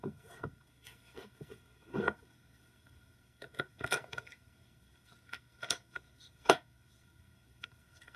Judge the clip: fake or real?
fake